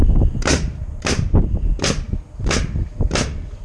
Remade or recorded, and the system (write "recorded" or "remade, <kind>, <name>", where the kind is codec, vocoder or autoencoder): recorded